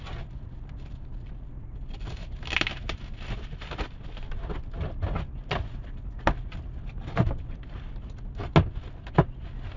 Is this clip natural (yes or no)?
yes